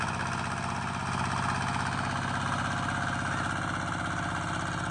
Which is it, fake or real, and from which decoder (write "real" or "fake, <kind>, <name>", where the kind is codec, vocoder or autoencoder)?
real